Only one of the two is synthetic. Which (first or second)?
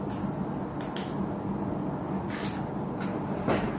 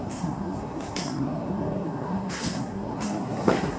second